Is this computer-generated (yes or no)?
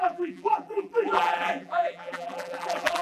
yes